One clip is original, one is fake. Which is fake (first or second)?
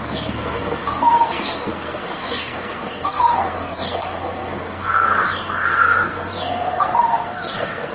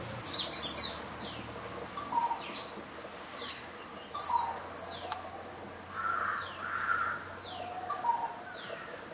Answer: first